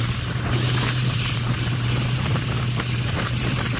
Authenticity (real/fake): fake